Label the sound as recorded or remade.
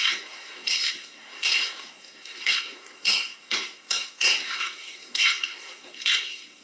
remade